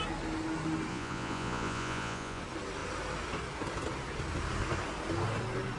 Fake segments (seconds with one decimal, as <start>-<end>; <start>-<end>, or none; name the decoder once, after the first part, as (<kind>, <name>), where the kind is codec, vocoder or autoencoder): 0.9-2.4 (vocoder, Vocos)